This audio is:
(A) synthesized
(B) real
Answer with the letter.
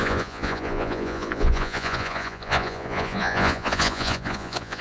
A